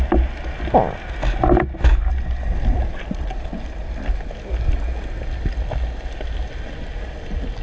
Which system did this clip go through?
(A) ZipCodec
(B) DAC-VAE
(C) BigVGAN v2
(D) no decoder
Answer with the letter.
D